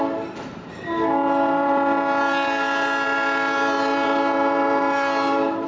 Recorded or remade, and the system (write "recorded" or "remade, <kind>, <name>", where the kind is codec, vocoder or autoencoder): remade, vocoder, BigVGAN v2